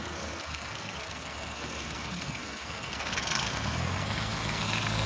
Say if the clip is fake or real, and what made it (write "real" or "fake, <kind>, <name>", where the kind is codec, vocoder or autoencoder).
fake, codec, SNAC